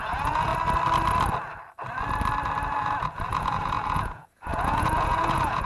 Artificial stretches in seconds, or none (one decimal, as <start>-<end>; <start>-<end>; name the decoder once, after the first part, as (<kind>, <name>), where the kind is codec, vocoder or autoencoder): 0.0-0.5 (vocoder, Vocos); 2.7-5.7